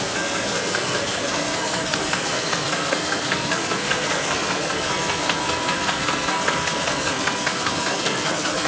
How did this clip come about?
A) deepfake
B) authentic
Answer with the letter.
A